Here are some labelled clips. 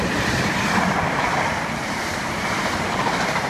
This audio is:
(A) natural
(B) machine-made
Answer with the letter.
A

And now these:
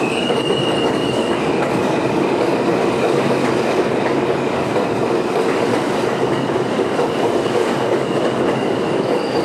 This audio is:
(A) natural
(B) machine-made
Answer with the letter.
B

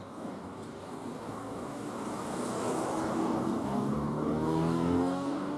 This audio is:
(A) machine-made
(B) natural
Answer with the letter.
A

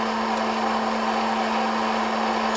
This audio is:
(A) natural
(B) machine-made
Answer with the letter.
A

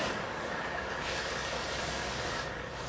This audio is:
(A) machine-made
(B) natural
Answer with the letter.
A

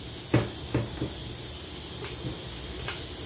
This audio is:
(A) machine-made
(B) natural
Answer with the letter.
B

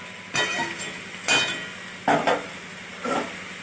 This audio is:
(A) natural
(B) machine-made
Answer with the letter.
A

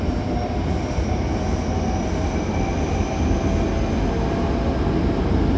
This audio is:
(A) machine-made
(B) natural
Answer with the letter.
B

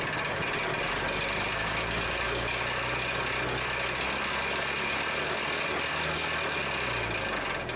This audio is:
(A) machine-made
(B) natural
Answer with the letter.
B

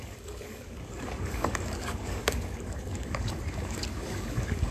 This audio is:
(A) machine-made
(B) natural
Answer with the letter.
A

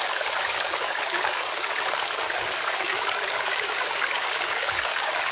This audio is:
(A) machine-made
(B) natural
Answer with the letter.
A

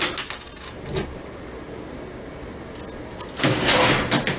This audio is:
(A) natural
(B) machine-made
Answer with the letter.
A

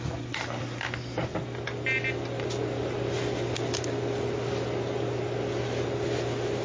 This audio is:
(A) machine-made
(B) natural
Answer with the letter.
B